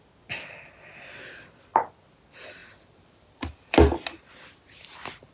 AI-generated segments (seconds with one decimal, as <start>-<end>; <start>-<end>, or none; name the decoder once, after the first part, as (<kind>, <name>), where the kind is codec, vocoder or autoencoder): 2.6-5.3 (vocoder, BigVGAN v2)